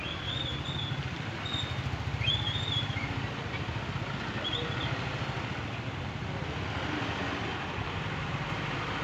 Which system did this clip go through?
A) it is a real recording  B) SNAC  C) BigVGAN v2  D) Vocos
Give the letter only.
A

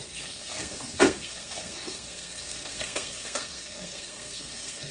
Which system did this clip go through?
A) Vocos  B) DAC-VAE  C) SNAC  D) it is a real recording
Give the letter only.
C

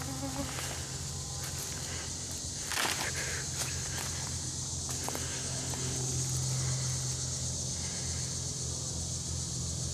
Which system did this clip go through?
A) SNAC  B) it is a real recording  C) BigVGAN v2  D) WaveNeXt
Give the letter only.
B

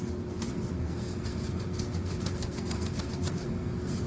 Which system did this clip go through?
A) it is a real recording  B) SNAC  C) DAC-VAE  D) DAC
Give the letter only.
B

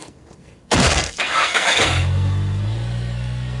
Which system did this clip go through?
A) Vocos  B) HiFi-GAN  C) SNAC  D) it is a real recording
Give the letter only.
C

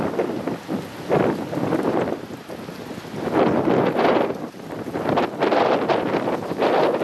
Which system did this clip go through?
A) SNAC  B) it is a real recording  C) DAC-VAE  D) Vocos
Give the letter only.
B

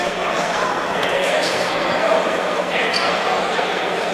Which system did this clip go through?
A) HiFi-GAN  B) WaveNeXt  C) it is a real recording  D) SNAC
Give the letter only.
D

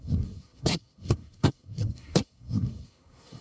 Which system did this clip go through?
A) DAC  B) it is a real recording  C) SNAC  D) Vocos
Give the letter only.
C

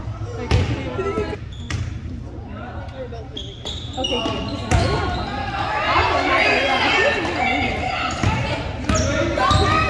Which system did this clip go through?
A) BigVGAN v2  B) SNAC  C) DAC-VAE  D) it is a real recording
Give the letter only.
D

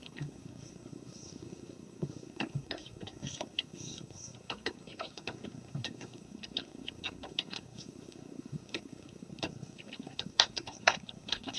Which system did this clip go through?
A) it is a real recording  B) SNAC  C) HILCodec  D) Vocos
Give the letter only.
B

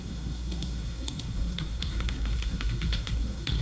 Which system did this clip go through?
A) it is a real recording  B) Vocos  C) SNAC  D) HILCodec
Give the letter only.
C